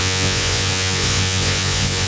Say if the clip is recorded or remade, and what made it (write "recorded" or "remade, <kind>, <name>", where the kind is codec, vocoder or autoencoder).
remade, vocoder, Vocos